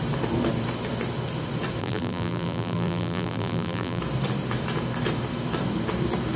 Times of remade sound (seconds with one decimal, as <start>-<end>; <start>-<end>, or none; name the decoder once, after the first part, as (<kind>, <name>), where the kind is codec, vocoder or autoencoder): 1.8-4.0 (vocoder, BigVGAN v2)